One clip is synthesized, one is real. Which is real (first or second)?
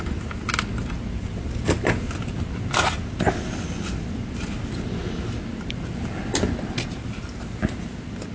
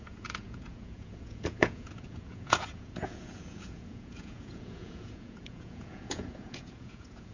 first